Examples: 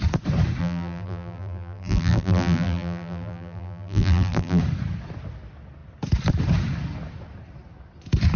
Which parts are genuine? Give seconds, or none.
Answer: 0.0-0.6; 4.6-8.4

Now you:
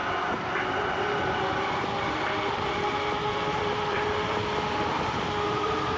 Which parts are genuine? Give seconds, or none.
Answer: 0.0-3.6

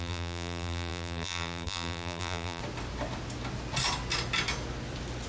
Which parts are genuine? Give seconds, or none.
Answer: 2.6-5.3